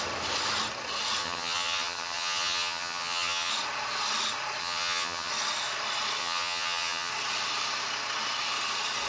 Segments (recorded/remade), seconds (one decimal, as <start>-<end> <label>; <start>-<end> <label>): 0.0-1.2 recorded; 1.2-3.5 remade; 3.5-4.6 recorded; 4.6-5.3 remade; 5.3-6.2 recorded; 6.2-7.1 remade; 7.1-9.1 recorded

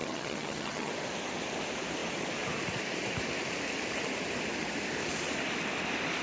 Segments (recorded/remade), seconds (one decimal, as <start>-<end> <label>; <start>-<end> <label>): 0.0-0.9 remade; 0.9-6.2 recorded

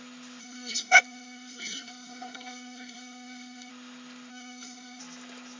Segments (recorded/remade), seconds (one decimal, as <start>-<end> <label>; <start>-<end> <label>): 0.0-0.4 recorded; 0.4-3.7 remade; 3.7-4.3 recorded; 4.3-5.0 remade; 5.0-5.6 recorded

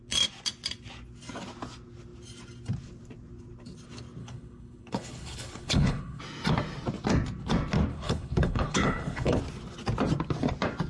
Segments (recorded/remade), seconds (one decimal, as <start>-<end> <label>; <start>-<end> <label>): 0.0-4.2 recorded; 4.2-6.2 remade; 6.2-7.9 recorded; 7.9-9.4 remade; 9.4-10.9 recorded